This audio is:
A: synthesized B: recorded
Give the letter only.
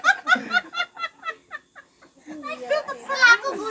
B